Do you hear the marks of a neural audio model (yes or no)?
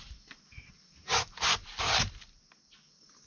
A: no